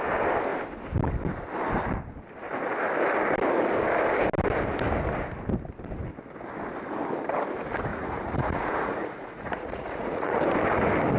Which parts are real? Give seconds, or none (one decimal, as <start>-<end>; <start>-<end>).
0.0-7.9; 10.4-11.2